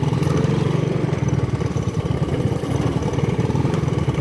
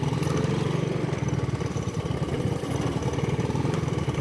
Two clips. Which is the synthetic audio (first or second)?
first